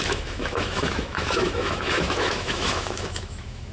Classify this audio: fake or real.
fake